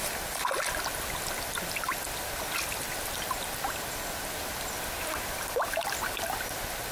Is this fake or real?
real